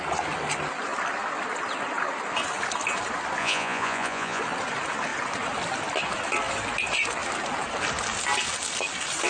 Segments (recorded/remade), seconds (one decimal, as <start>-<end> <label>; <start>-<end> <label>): 0.0-3.4 recorded; 3.4-4.4 remade; 4.4-9.3 recorded